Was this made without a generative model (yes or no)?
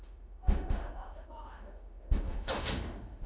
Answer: no